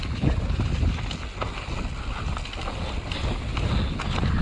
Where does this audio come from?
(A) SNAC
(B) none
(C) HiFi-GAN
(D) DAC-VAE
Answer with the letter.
B